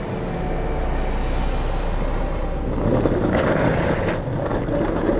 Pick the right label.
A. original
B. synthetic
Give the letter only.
A